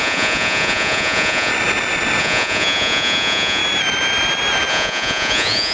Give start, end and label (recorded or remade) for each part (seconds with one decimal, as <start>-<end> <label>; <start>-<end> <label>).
0.0-1.5 remade; 1.5-2.2 recorded; 2.2-3.6 remade; 3.6-4.7 recorded; 4.7-5.7 remade